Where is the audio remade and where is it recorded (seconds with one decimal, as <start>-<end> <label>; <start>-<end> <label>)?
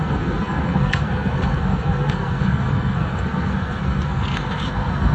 0.0-5.1 remade